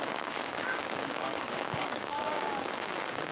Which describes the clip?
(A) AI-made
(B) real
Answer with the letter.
A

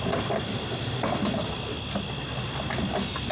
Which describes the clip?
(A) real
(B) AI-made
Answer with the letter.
A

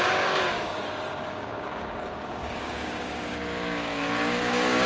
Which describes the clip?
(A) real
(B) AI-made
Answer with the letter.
B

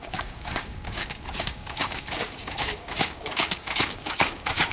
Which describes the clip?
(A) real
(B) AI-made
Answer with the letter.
B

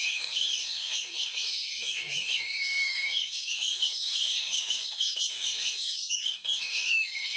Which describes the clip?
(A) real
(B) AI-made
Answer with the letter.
B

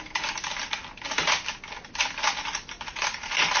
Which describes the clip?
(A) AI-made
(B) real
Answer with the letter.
B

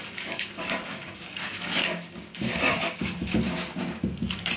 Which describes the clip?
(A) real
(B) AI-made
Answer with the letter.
B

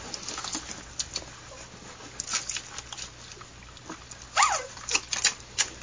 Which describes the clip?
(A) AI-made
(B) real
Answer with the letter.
B